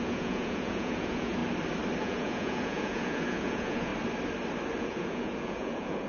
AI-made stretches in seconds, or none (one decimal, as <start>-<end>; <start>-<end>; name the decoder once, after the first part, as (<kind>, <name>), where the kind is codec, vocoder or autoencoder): 0.0-1.4 (vocoder, Vocos); 2.0-3.9; 4.8-6.1